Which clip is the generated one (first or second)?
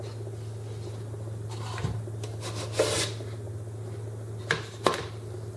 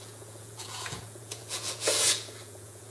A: second